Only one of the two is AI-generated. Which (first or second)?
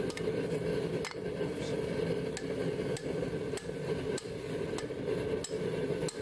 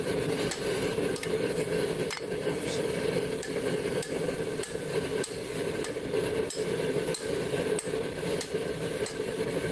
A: second